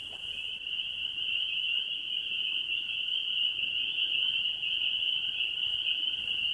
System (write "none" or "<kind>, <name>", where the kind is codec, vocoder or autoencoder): none